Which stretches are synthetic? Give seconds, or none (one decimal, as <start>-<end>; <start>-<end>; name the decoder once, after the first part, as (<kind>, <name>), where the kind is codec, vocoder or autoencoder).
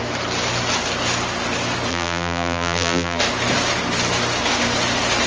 1.9-3.2 (vocoder, BigVGAN v2)